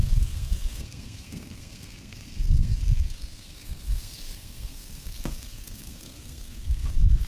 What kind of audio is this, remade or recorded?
remade